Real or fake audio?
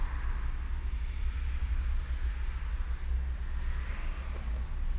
real